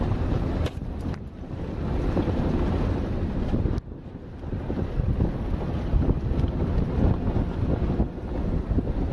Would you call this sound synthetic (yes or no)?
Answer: no